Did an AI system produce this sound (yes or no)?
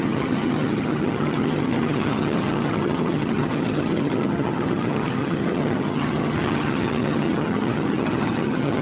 yes